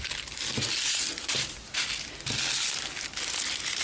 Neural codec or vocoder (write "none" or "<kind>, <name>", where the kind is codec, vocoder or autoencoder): none